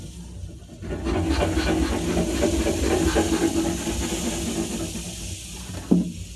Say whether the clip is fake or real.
real